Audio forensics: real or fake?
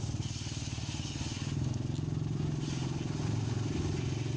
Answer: real